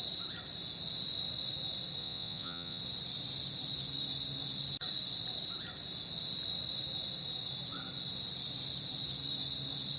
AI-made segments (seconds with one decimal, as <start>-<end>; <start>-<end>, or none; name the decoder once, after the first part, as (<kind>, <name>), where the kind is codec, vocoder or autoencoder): 2.0-2.8 (vocoder, Vocos)